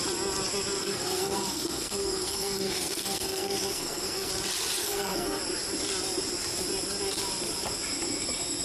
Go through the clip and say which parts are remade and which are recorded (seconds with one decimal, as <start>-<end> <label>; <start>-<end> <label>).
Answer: 0.0-0.8 recorded; 0.8-4.3 remade; 4.3-4.8 recorded; 4.8-5.4 remade; 5.4-8.6 recorded